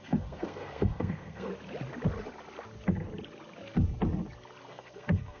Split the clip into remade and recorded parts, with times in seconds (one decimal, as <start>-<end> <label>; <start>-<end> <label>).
0.0-1.5 remade; 1.5-4.7 recorded; 4.7-5.4 remade